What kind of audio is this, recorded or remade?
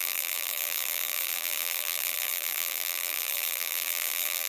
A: remade